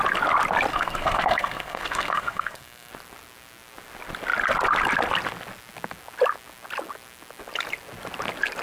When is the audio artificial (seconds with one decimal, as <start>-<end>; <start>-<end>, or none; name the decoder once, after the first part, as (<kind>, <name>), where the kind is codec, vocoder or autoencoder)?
0.7-2.9 (codec, SNAC)